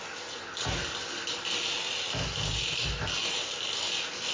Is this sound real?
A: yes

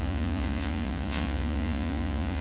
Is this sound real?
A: no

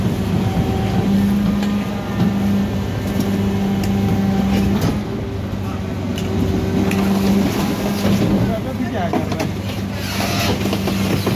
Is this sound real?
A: yes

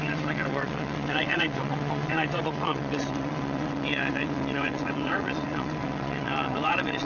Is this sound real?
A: no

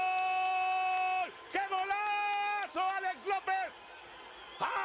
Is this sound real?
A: yes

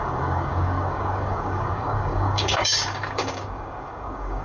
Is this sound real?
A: no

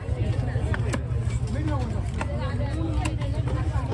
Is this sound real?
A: yes